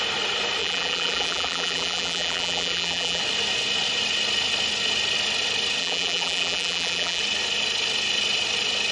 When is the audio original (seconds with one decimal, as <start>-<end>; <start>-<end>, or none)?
0.0-0.6; 3.2-5.8; 7.2-8.9